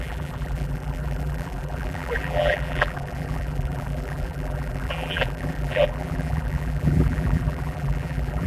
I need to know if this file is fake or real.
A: fake